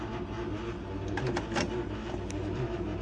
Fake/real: real